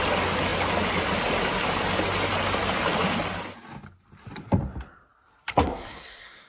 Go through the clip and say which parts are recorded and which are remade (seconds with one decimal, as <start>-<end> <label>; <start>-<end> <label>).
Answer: 0.0-5.5 recorded; 5.5-6.5 remade